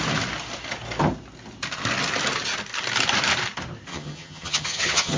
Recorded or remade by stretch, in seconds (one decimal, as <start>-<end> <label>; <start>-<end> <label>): 0.0-3.9 recorded; 3.9-5.2 remade